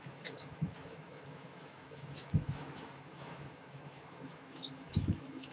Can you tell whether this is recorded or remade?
remade